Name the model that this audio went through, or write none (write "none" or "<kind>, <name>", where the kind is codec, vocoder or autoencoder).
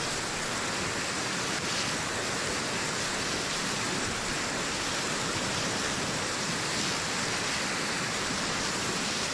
none